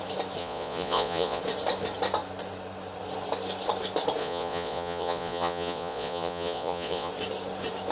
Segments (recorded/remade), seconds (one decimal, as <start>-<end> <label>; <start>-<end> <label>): 0.0-0.4 recorded; 0.4-1.4 remade; 1.4-4.2 recorded; 4.2-7.1 remade; 7.1-7.9 recorded